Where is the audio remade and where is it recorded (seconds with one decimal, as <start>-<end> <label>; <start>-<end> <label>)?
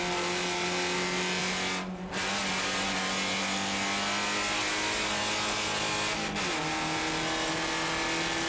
0.0-8.5 recorded